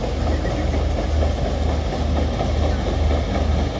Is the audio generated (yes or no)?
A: no